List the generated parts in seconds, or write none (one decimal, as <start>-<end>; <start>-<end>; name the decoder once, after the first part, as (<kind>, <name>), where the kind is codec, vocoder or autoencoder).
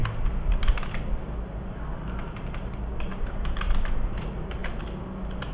none